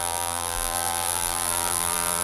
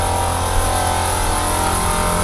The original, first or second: second